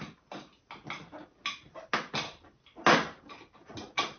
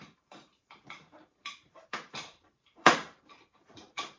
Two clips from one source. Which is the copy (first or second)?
second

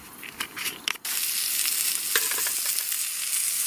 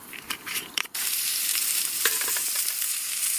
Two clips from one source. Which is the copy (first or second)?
second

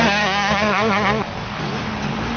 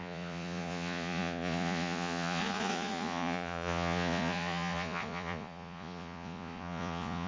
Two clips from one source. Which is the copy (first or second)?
second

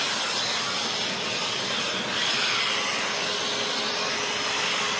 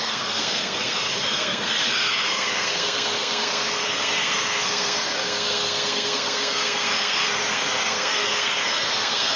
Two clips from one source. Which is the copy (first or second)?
second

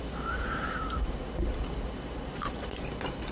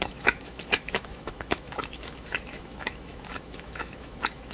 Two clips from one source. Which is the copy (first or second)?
second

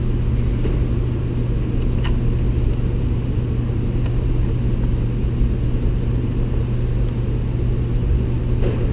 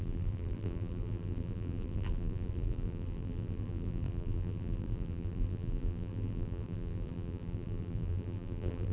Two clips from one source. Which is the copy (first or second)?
second